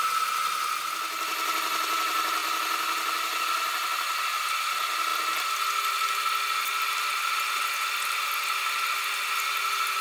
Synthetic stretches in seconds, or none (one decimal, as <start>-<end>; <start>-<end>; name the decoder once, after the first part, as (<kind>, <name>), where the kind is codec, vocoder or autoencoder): none